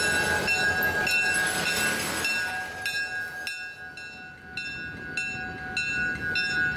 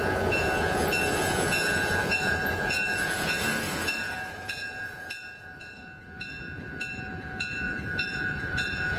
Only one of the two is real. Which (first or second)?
first